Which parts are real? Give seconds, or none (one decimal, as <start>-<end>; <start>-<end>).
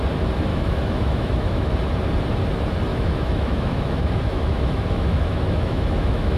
0.0-0.5; 1.7-2.9